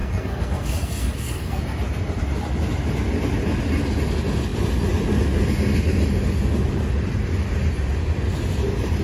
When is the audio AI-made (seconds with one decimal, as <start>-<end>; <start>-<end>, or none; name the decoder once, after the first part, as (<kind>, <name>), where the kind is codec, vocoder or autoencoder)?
0.0-1.6 (codec, SNAC)

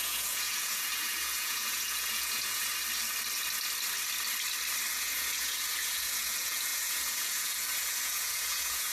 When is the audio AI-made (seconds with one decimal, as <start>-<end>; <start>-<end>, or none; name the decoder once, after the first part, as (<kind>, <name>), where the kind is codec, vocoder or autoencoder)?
0.0-2.7 (vocoder, Vocos); 4.9-8.9

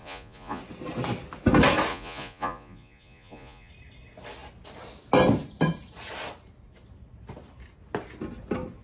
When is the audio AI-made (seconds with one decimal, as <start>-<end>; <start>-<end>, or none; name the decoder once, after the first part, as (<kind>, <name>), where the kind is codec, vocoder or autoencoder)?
0.0-0.6 (vocoder, Vocos); 1.9-3.7

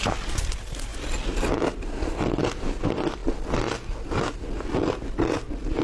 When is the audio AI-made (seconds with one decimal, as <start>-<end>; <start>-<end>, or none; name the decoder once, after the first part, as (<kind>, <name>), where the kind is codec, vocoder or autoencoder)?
none

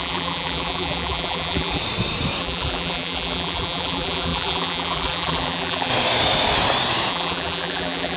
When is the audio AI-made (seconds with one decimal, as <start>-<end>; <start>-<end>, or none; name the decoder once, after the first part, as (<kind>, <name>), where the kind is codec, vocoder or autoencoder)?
0.0-1.8 (vocoder, BigVGAN v2); 2.4-5.9; 7.1-8.2